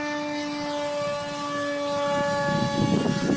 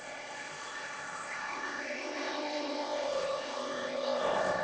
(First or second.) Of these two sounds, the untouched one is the first